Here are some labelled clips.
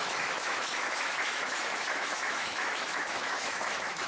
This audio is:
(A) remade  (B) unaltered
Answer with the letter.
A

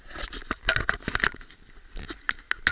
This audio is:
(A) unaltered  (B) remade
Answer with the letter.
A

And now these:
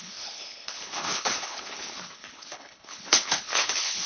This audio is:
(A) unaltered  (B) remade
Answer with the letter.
B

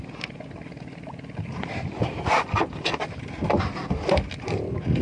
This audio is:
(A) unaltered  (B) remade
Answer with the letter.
A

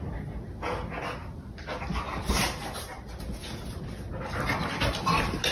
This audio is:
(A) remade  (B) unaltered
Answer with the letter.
B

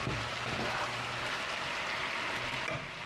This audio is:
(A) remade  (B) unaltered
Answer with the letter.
B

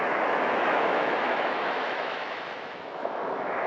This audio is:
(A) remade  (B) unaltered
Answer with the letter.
A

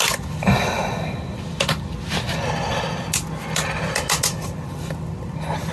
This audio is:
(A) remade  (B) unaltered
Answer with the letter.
B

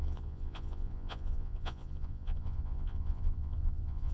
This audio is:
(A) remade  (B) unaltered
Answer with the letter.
A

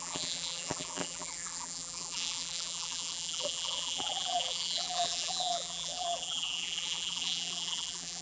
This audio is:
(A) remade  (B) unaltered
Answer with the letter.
A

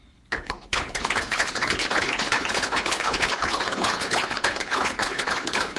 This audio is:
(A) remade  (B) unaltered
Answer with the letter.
A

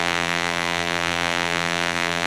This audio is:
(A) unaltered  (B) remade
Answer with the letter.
B